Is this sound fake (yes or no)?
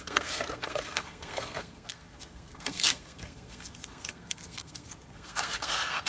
yes